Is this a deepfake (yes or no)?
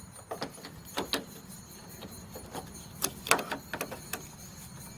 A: no